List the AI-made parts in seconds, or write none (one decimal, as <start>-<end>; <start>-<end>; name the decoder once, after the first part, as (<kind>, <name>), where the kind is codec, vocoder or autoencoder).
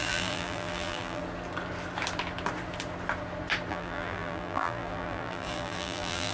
0.0-1.2 (vocoder, BigVGAN v2); 3.7-6.3